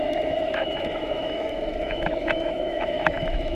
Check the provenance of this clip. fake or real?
fake